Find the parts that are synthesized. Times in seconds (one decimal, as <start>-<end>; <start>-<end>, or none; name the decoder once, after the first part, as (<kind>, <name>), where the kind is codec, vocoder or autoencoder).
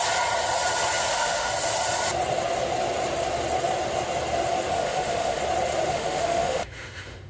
1.1-1.5 (autoencoder, DAC-VAE); 4.7-5.4; 5.9-7.3